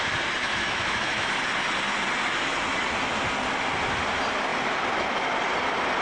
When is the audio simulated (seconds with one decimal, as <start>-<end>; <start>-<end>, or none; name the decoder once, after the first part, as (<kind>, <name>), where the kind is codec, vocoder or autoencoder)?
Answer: 0.4-1.3 (autoencoder, DAC-VAE)